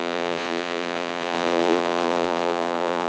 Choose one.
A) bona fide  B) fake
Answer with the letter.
B